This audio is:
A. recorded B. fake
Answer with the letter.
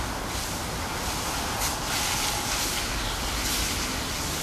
A